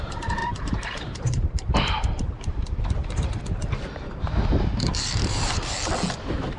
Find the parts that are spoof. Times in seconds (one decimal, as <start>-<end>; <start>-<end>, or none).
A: 0.4-3.4; 4.5-5.9

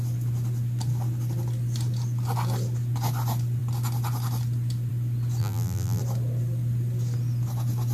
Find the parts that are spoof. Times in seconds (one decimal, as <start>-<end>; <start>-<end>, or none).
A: 5.4-6.0

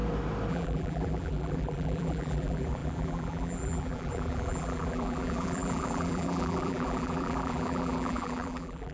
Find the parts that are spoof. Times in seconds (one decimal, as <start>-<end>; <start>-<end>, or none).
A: 0.5-8.9

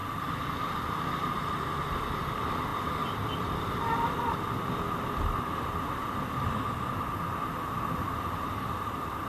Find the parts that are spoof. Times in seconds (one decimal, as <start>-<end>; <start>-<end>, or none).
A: none